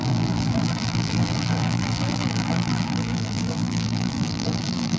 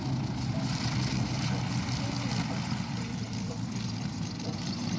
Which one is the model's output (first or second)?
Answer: first